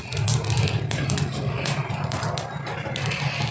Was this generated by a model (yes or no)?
no